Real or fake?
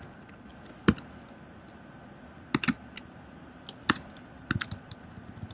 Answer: real